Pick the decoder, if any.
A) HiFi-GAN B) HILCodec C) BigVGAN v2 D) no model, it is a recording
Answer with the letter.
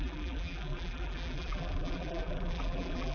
C